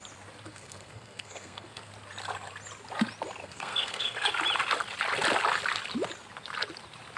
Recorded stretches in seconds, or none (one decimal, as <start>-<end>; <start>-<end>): 0.0-0.5; 1.9-3.4; 4.3-7.2